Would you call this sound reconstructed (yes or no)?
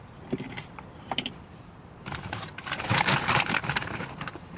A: yes